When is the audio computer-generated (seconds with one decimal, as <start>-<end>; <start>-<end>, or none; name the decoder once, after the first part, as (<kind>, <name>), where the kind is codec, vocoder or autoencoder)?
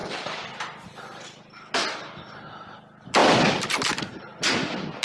none